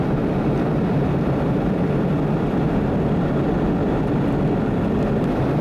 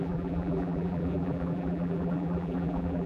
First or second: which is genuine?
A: first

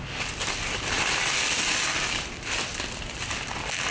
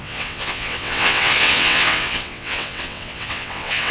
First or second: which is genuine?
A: first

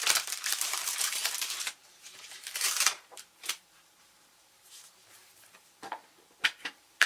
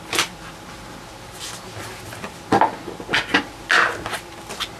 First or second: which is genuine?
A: second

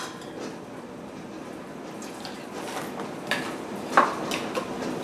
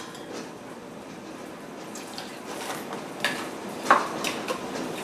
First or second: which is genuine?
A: first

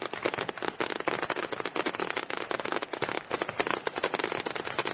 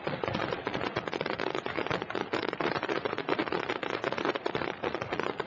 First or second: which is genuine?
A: first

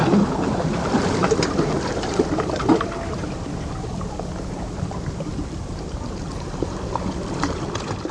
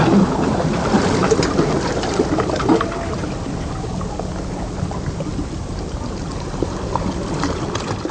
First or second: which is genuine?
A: second